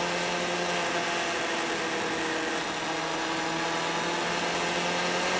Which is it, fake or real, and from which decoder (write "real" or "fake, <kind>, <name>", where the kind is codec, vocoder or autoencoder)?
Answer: real